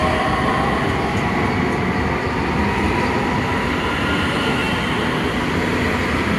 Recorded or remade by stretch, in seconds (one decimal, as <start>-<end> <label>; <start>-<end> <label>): 0.0-6.4 recorded